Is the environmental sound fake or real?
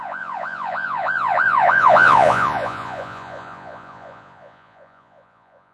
fake